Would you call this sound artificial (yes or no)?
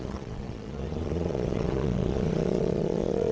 yes